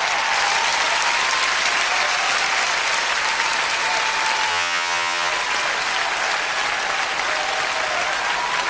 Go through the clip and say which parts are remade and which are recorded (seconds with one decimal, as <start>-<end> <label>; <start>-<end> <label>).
0.0-4.5 recorded; 4.5-5.3 remade; 5.3-8.7 recorded